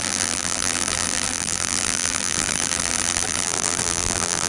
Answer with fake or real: fake